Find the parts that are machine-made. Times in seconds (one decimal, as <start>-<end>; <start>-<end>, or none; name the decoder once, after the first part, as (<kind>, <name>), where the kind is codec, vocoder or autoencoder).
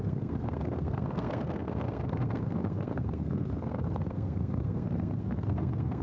0.0-6.0 (codec, SNAC)